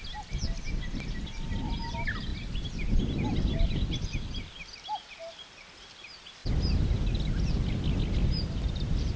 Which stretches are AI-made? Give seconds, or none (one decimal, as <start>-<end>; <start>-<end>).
none